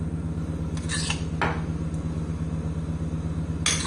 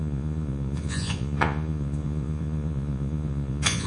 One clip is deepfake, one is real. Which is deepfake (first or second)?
second